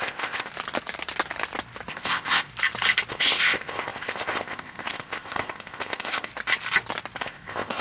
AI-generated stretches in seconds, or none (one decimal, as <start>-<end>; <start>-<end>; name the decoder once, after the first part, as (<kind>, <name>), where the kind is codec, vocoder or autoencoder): 0.0-0.5 (codec, ZipCodec); 1.9-2.5; 3.1-6.3; 7.2-7.8

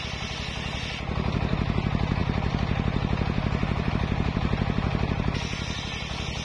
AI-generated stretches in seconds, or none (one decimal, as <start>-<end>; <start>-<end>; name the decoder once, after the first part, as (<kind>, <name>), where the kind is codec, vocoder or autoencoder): none